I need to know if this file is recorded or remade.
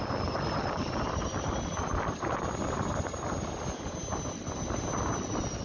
recorded